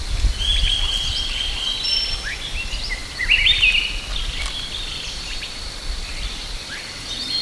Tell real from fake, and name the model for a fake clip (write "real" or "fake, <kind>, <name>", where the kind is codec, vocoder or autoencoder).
fake, vocoder, BigVGAN v2